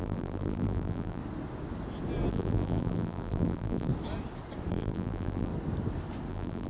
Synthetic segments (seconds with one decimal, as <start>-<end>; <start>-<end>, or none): 0.0-1.2; 2.3-3.9; 4.7-5.5; 6.3-6.7